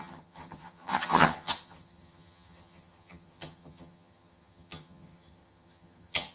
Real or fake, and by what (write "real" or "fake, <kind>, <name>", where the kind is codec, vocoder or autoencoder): fake, vocoder, HiFi-GAN